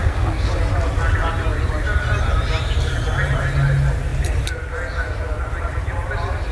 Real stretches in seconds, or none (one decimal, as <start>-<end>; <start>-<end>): 0.5-6.5